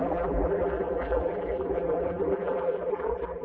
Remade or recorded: remade